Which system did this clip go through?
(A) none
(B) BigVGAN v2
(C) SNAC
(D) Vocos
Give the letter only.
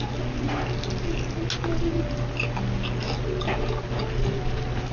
A